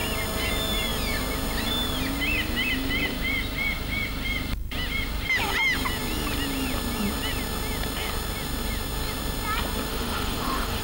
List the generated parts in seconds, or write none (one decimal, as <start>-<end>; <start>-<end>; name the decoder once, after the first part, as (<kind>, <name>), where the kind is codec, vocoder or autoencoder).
9.9-10.8 (autoencoder, DAC-VAE)